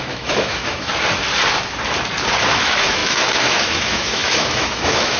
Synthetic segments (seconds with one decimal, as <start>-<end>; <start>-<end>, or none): 0.0-0.9; 2.5-5.2